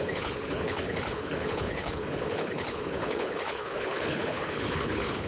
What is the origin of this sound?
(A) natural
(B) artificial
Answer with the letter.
B